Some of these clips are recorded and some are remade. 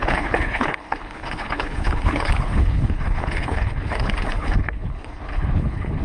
remade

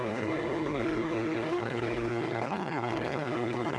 remade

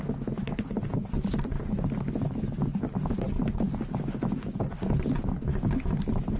recorded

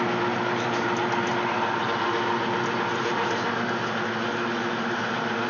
recorded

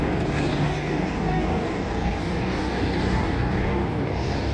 remade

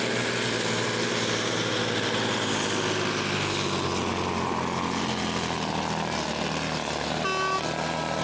recorded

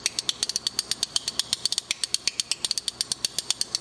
recorded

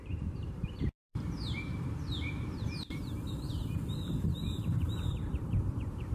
remade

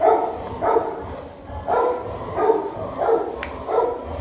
recorded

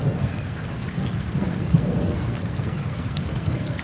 remade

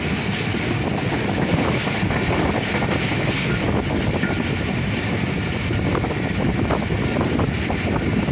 recorded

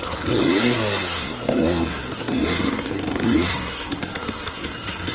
remade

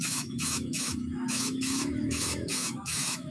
remade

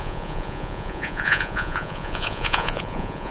remade